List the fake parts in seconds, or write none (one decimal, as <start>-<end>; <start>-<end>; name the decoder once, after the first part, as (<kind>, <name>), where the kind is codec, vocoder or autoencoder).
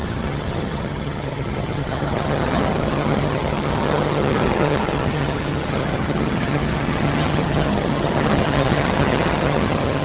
0.0-10.0 (vocoder, HiFi-GAN)